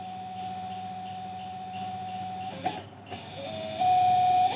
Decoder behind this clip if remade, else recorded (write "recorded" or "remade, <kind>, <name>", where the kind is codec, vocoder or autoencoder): recorded